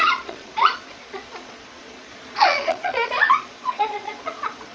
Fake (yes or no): yes